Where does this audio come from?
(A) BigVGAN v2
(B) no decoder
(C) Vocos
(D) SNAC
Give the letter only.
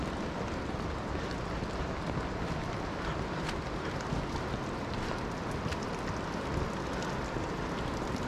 B